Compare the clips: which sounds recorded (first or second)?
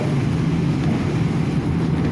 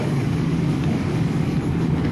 first